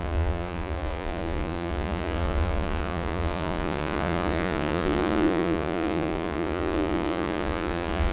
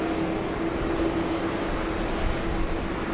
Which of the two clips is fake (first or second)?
first